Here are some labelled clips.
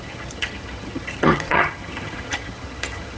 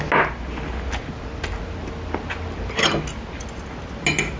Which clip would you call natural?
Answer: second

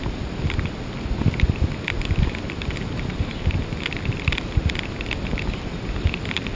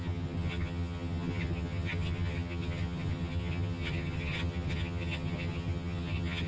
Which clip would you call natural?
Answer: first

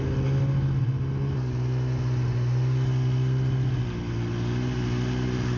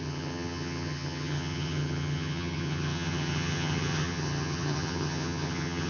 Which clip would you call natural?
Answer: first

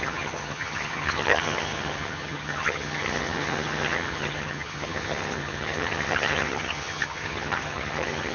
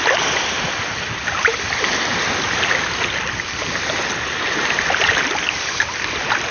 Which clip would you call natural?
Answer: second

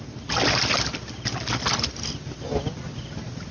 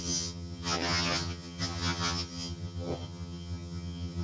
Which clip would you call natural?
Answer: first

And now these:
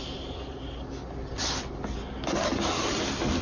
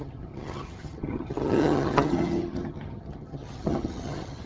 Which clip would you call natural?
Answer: first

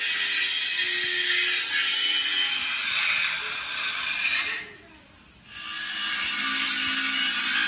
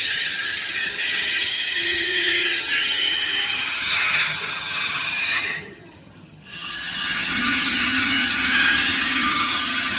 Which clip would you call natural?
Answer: first